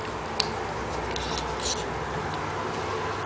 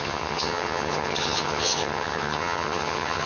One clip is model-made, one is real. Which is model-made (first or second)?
second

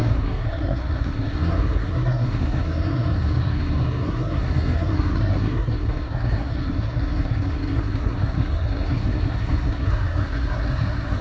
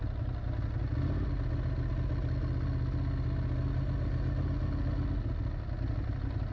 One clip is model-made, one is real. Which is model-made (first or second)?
first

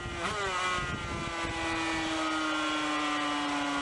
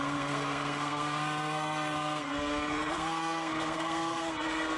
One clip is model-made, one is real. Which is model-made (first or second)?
second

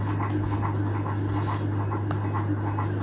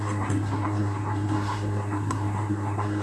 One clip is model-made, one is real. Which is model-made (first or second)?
second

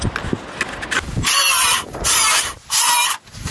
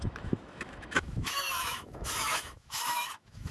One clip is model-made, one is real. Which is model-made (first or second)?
second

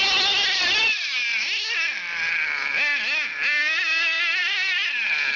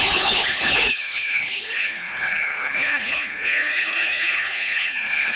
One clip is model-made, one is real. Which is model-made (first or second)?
second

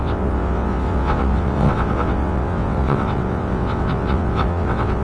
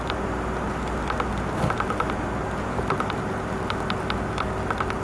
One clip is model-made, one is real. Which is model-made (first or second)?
first